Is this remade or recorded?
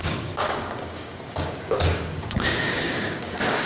remade